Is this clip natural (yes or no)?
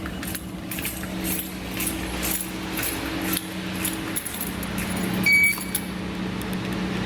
yes